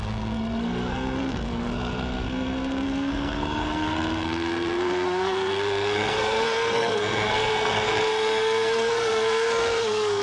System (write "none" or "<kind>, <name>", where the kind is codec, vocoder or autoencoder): codec, SNAC